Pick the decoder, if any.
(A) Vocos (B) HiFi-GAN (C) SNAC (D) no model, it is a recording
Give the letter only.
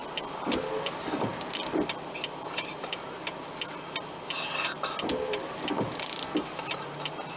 D